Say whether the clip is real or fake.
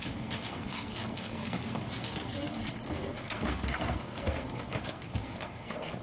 fake